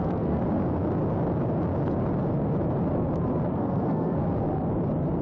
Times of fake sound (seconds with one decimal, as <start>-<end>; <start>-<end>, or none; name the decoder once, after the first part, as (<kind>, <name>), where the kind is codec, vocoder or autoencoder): 0.0-0.4 (codec, SNAC); 3.5-4.2